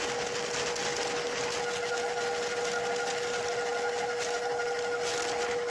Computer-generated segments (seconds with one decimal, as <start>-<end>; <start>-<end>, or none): none